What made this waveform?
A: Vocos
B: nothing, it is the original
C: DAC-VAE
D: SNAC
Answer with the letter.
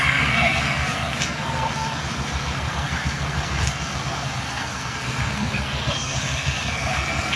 D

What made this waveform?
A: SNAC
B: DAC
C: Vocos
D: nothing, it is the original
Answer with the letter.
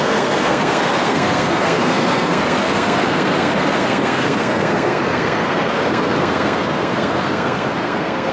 A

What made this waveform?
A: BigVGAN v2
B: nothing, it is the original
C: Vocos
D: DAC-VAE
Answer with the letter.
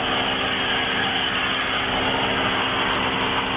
B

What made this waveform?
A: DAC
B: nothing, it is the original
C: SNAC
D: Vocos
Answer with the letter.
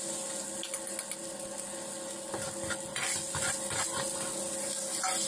B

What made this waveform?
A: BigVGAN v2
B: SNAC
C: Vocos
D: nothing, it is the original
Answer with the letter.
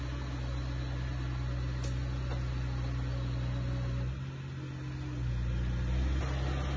D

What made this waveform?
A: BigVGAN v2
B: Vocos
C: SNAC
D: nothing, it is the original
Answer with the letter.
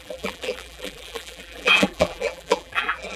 A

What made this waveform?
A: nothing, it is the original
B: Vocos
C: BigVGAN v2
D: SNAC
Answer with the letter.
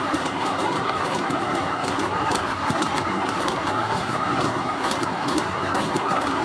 D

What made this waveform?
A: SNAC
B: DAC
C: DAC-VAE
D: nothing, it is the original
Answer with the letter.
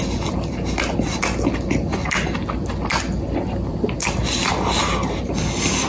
D